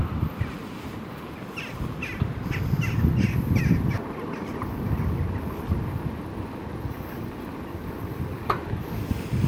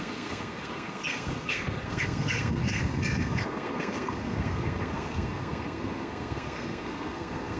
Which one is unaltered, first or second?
first